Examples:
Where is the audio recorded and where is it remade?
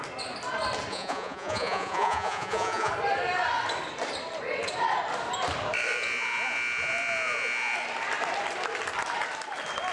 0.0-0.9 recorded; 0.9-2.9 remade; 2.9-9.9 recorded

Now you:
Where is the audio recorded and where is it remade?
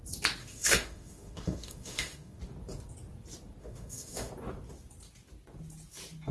0.0-0.4 recorded; 0.4-2.4 remade; 2.4-3.6 recorded; 3.6-4.3 remade; 4.3-6.3 recorded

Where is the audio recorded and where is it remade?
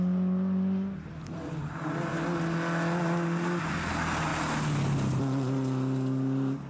0.0-6.7 recorded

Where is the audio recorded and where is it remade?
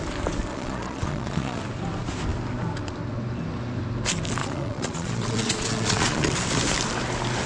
0.0-0.5 recorded; 0.5-1.6 remade; 1.6-4.4 recorded; 4.4-6.3 remade; 6.3-7.5 recorded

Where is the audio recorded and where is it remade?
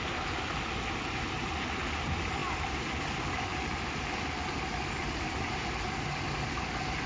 0.0-7.1 recorded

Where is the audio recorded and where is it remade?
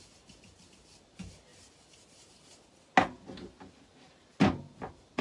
0.0-5.2 recorded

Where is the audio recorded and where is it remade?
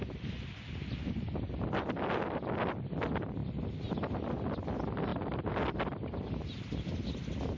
0.0-7.6 recorded